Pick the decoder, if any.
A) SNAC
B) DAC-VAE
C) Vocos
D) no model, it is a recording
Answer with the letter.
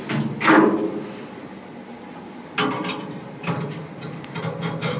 D